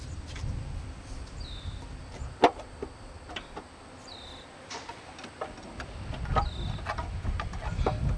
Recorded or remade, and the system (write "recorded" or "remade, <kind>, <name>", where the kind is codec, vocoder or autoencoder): recorded